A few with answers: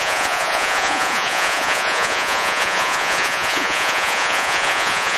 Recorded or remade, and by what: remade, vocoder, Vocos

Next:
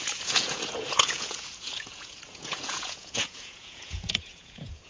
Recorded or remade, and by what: remade, vocoder, Vocos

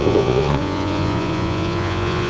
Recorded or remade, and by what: remade, vocoder, Vocos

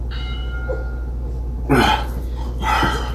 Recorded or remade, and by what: recorded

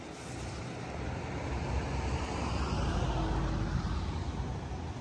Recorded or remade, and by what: recorded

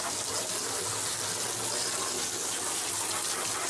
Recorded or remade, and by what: recorded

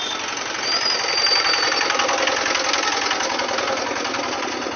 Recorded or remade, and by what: recorded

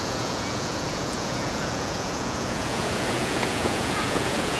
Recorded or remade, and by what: remade, vocoder, Vocos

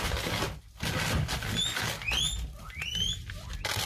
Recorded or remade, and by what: recorded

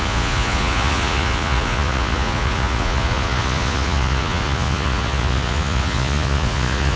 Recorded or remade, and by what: remade, vocoder, Vocos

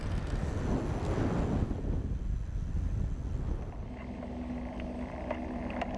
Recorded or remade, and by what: recorded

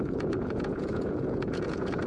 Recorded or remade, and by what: remade, vocoder, Vocos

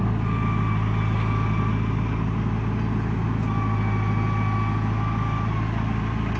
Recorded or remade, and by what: recorded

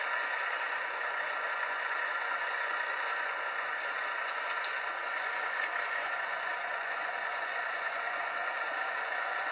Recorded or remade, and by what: remade, vocoder, Vocos